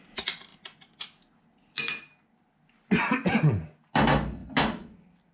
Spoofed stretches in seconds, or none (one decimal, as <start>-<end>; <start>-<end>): none